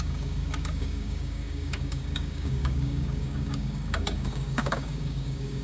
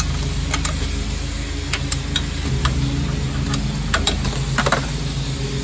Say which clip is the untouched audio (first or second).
second